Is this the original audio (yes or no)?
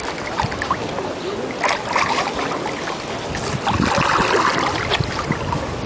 yes